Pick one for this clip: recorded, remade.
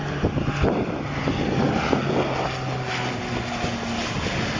recorded